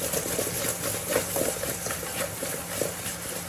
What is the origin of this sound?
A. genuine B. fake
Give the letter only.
A